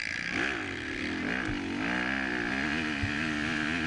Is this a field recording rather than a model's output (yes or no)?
yes